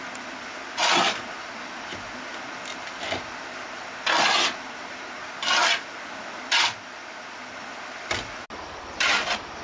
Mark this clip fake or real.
real